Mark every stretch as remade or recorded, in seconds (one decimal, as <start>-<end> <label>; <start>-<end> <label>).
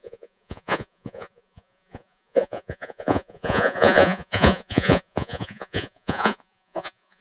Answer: 0.0-7.2 remade